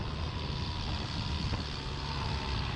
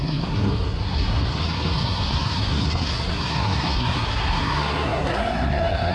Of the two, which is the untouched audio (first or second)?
first